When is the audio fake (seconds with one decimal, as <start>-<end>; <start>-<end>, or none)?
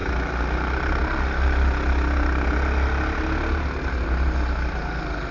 none